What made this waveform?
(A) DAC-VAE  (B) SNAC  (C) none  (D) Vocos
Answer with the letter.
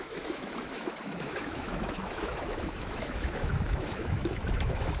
A